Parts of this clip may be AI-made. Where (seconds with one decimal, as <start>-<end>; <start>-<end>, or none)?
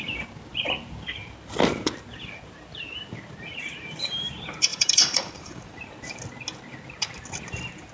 4.7-5.8